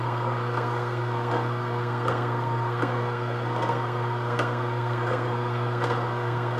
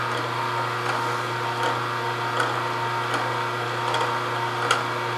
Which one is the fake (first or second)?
first